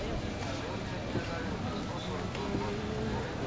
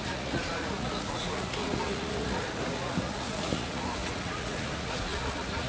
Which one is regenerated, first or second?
second